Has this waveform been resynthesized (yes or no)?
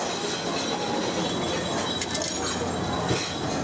no